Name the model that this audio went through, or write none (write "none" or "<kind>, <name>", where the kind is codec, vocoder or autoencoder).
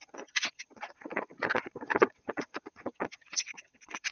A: vocoder, WaveNeXt